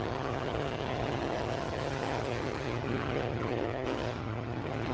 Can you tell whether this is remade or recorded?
remade